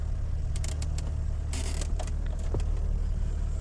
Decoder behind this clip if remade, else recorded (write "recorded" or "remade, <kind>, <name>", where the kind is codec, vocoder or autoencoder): recorded